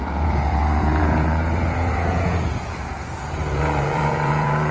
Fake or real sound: fake